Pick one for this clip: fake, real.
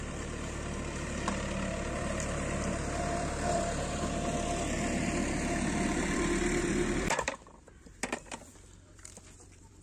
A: fake